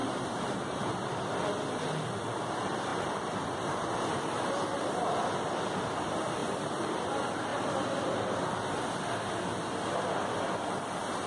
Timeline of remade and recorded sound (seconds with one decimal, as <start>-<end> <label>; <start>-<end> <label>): 0.0-0.9 remade; 0.9-2.9 recorded; 2.9-5.1 remade; 5.1-6.4 recorded; 6.4-7.0 remade; 7.0-11.3 recorded